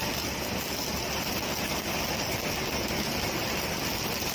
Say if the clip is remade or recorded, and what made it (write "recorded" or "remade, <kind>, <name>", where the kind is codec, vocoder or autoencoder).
recorded